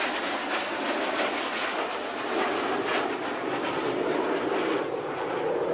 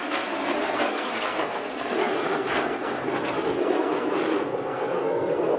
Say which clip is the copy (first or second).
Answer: second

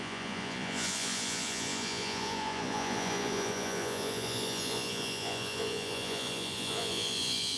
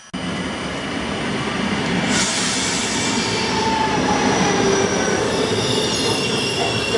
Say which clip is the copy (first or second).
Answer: first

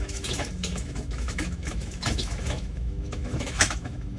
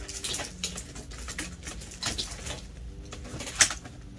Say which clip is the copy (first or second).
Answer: first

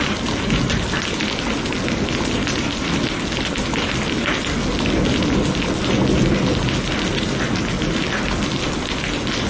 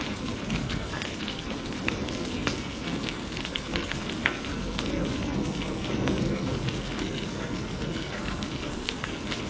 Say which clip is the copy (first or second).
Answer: second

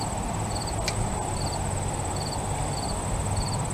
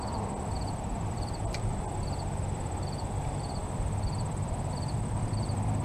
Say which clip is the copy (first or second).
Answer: second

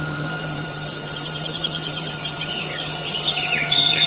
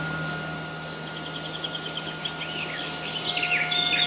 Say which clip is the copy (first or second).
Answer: first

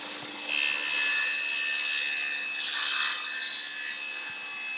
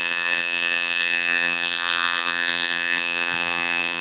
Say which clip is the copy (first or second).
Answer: second